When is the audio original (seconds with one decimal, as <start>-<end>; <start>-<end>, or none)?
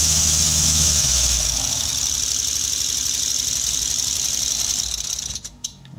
1.9-5.5